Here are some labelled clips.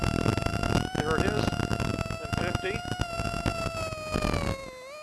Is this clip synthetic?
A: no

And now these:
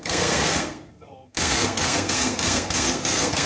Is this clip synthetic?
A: yes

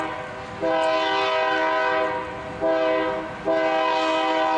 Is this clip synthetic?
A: no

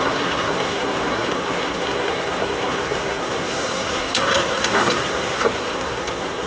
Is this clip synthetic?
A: yes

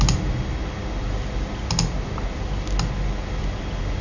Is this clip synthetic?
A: no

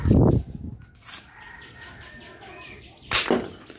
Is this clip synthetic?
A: no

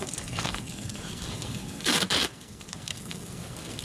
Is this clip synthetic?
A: yes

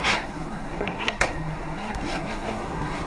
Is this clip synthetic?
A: yes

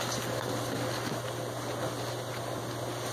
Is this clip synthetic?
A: no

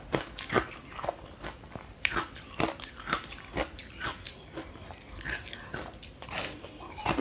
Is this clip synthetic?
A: no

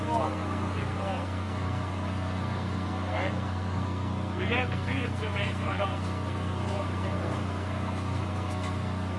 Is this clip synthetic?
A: yes